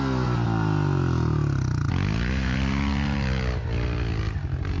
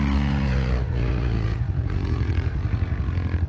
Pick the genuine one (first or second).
first